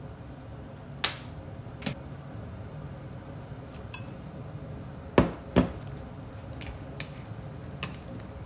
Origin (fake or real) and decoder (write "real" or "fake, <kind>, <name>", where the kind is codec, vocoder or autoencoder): real